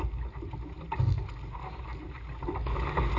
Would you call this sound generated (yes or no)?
no